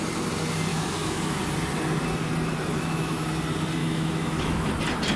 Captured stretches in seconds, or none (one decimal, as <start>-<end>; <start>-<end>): 0.0-0.7; 1.4-2.7; 3.3-3.8; 4.7-5.2